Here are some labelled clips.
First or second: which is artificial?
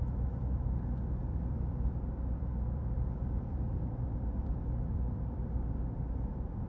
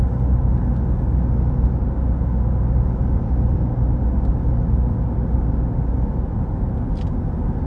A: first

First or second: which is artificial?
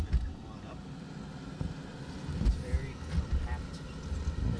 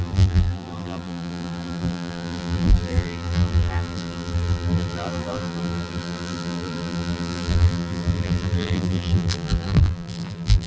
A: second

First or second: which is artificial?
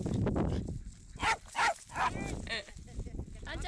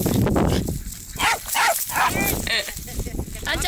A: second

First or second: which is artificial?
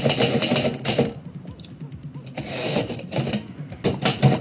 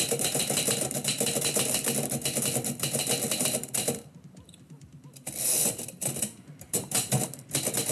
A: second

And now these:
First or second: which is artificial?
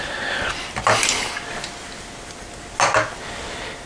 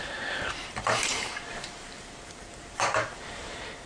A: second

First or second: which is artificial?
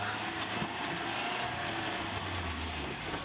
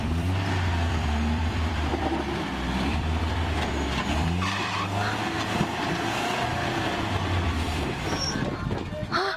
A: second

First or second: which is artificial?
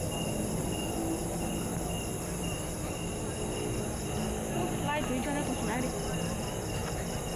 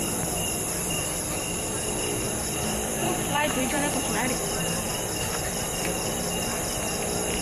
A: second